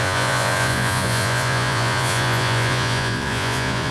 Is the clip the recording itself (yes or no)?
no